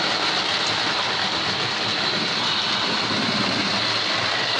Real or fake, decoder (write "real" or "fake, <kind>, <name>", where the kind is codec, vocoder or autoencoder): real